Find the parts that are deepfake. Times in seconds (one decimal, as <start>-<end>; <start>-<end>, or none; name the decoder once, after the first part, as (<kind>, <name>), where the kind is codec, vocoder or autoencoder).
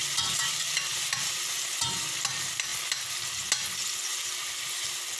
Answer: none